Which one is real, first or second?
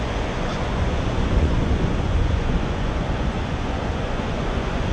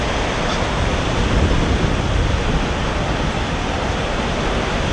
second